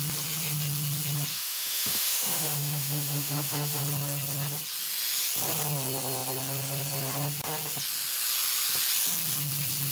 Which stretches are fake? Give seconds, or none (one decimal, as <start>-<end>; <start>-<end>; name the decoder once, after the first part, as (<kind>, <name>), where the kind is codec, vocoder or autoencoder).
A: 1.3-3.8 (autoencoder, DAC-VAE)